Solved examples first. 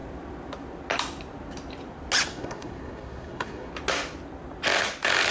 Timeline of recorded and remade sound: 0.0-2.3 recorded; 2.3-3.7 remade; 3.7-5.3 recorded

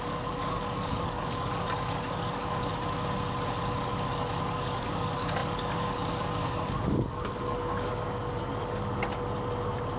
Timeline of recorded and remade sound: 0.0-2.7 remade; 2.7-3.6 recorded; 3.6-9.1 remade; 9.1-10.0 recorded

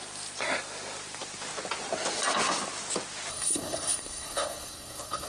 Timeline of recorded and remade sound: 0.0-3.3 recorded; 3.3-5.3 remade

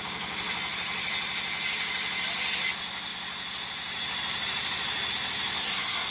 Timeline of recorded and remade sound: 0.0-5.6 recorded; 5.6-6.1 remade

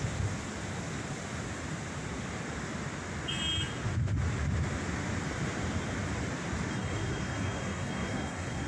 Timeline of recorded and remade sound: 0.0-6.7 recorded; 6.7-8.7 remade

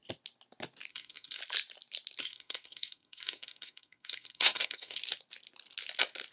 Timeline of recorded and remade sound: 0.0-0.9 recorded; 0.9-1.4 remade; 1.4-2.2 recorded; 2.2-5.0 remade; 5.0-6.3 recorded

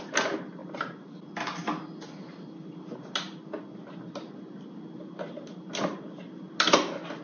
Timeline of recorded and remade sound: 0.0-7.2 recorded